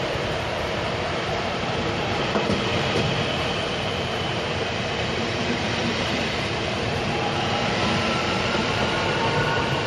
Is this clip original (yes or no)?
no